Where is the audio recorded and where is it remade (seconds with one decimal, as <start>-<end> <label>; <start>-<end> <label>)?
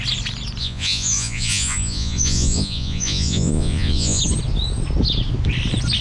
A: 0.0-0.6 recorded; 0.6-4.2 remade; 4.2-6.0 recorded